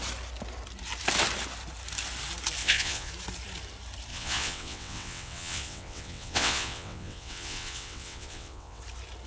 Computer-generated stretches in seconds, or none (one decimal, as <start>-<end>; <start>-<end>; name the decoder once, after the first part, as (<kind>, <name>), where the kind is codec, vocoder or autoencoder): 2.6-3.1 (vocoder, WaveNeXt); 4.1-8.8

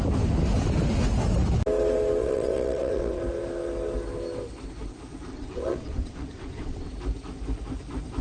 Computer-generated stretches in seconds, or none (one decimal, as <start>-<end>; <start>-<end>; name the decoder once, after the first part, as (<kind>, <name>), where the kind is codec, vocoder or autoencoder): 2.2-3.2 (vocoder, WaveNeXt); 5.3-6.9

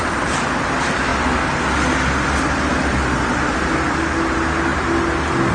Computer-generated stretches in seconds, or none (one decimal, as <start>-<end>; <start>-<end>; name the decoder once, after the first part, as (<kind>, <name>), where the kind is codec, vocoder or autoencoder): none

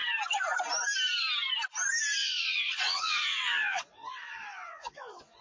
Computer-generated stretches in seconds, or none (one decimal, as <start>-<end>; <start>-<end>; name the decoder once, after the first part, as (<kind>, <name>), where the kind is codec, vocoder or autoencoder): 2.2-5.4 (vocoder, WaveNeXt)

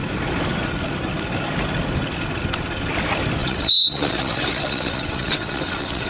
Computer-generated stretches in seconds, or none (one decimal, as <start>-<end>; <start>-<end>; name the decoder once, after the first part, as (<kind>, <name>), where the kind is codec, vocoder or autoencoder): 3.4-6.1 (vocoder, WaveNeXt)

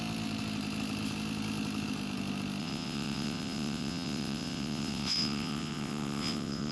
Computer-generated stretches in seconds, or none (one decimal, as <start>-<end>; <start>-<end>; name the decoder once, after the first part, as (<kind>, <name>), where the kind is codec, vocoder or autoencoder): 2.6-6.7 (vocoder, WaveNeXt)